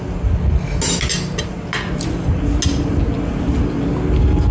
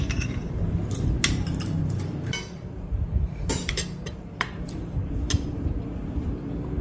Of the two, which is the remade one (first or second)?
second